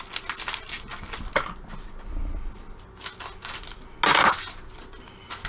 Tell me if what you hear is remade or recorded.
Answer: recorded